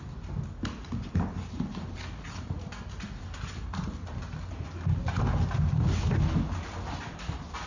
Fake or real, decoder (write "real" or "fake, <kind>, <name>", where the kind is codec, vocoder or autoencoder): real